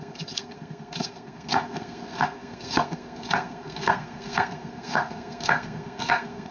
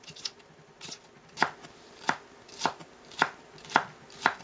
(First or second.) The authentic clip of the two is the second